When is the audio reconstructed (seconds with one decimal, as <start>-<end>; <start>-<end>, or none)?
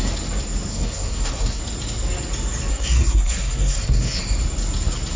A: 0.7-1.6; 2.7-4.2